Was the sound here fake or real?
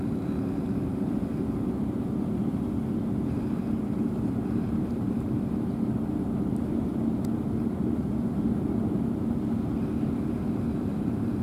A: fake